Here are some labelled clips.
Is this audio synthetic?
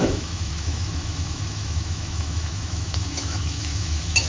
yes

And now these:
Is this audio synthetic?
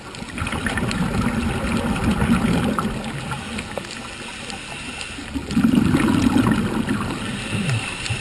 no